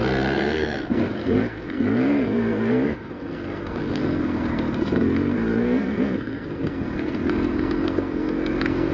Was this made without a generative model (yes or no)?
no